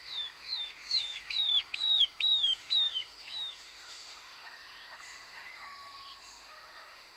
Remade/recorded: remade